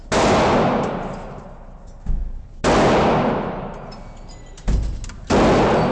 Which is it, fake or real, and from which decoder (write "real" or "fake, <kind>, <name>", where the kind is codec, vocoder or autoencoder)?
real